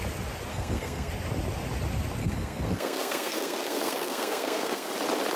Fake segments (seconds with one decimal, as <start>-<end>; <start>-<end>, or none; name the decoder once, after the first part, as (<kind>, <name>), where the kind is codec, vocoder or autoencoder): 0.5-1.1 (codec, SNAC); 2.2-4.9